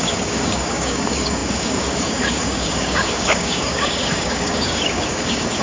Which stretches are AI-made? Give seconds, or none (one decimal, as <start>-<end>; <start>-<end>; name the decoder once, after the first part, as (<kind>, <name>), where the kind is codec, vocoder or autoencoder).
0.0-5.6 (codec, DAC)

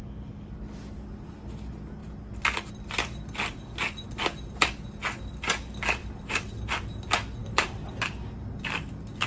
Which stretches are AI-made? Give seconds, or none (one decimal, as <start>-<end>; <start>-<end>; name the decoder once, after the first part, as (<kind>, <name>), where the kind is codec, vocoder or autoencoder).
6.0-6.6 (vocoder, BigVGAN v2); 7.4-7.9

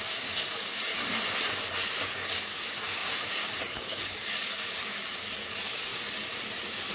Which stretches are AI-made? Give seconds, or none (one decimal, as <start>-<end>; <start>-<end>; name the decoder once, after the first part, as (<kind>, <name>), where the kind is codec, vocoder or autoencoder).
0.0-0.9 (codec, DAC); 2.0-5.9

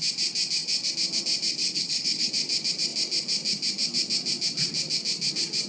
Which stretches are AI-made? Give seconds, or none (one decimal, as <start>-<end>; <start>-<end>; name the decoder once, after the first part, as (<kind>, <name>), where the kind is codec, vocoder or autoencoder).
1.6-2.3 (codec, HILCodec)

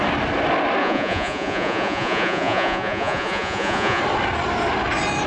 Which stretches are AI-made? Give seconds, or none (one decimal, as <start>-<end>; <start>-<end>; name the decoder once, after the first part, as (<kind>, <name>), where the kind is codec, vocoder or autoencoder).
0.8-4.0 (vocoder, Vocos)

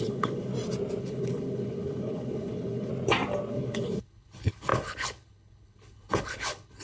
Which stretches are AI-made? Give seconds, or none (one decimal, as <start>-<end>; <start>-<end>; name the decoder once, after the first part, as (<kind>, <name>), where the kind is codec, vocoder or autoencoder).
0.0-0.5 (codec, HILCodec); 1.0-2.9; 3.5-6.8